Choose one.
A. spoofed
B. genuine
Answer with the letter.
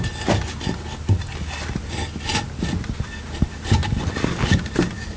B